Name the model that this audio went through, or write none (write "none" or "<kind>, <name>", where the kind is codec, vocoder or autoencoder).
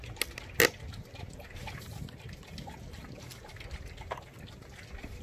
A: none